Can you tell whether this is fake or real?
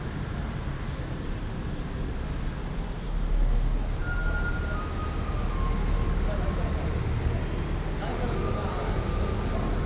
real